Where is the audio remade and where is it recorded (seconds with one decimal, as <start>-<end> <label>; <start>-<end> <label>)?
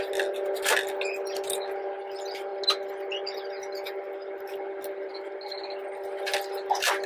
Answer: 0.0-7.1 recorded